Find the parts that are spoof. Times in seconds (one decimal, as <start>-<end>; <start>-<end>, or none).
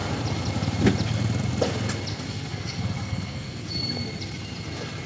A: 2.1-3.7